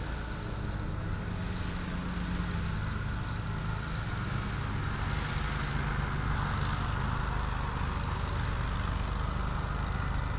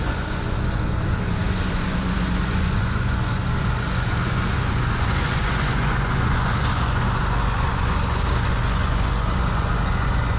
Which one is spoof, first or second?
second